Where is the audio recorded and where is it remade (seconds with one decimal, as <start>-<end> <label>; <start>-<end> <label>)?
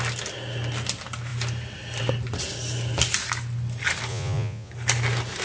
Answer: 0.0-4.1 recorded; 4.1-4.7 remade; 4.7-5.4 recorded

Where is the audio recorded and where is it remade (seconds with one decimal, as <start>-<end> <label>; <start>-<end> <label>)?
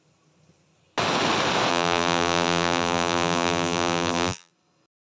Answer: 0.0-1.7 recorded; 1.7-4.5 remade; 4.5-5.1 recorded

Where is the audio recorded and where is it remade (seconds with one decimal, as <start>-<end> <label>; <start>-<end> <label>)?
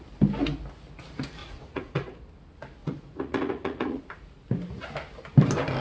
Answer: 0.0-1.4 recorded; 1.4-2.2 remade; 2.2-2.8 recorded; 2.8-4.0 remade; 4.0-5.8 recorded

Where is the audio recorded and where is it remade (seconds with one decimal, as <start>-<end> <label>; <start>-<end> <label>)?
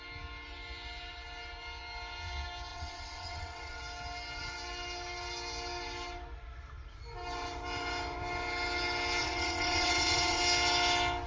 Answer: 0.0-2.7 recorded; 2.7-3.8 remade; 3.8-9.2 recorded; 9.2-10.4 remade; 10.4-11.3 recorded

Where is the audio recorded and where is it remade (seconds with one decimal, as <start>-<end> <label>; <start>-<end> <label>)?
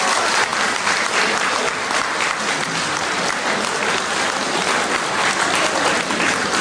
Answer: 0.0-6.6 recorded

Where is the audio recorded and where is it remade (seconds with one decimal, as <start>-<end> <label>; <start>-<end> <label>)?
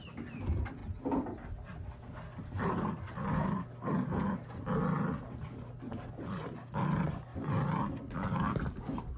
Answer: 0.0-9.2 recorded